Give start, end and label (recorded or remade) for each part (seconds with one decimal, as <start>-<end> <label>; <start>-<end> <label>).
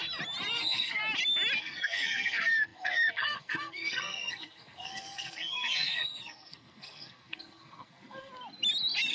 0.0-0.6 recorded; 0.6-1.0 remade; 1.0-1.6 recorded; 1.6-8.3 remade; 8.3-9.1 recorded